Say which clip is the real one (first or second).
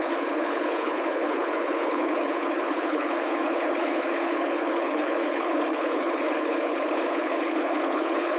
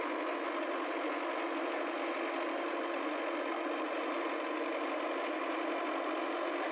second